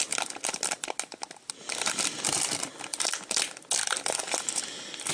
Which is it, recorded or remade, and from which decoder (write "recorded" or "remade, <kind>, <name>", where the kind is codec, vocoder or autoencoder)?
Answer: recorded